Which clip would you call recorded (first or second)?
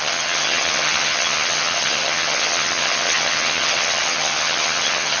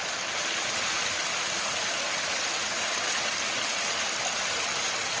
second